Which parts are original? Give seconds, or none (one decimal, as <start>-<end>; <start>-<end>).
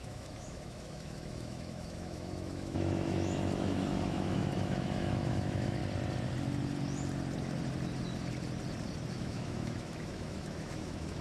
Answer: 5.8-9.1